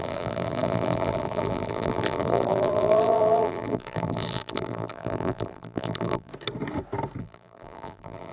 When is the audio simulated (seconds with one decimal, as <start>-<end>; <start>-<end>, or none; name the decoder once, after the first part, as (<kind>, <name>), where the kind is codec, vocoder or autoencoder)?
0.0-6.3 (vocoder, BigVGAN v2); 7.2-8.3